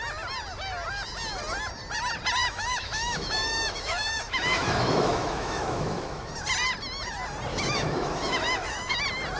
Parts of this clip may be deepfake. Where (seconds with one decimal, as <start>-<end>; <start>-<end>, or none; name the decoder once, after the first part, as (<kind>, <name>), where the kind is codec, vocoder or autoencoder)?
2.4-6.3 (autoencoder, DAC-VAE); 7.5-9.0